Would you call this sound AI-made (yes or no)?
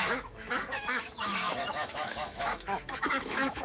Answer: yes